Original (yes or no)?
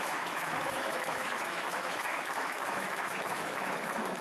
no